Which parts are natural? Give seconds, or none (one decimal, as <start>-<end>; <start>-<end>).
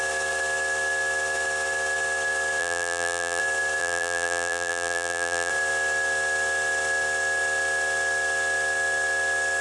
0.0-2.6; 3.4-3.8; 5.5-9.6